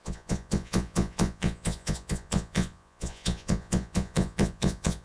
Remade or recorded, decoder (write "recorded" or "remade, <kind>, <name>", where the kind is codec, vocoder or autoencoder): remade, vocoder, Vocos